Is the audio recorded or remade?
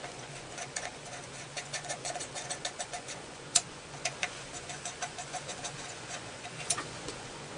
remade